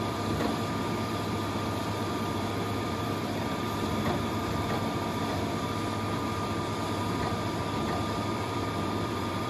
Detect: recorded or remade remade